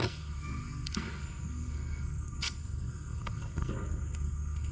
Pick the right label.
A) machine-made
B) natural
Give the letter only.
A